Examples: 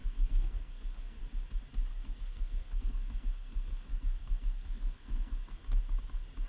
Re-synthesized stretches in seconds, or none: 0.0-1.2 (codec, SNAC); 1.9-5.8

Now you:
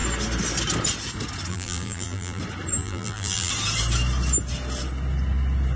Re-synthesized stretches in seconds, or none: 1.5-2.4 (vocoder, BigVGAN v2); 2.8-3.5

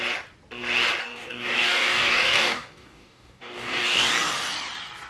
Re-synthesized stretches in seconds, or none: 1.0-4.1 (codec, DAC)

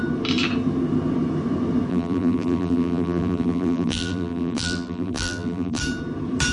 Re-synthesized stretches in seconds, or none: 1.9-5.8 (vocoder, BigVGAN v2)

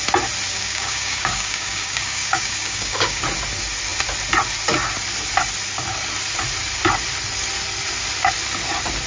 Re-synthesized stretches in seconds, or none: 0.5-3.2 (codec, DAC)

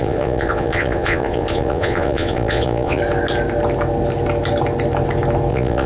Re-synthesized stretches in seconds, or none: 0.0-3.0 (vocoder, Vocos); 5.5-5.9

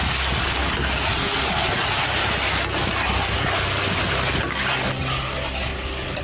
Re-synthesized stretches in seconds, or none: none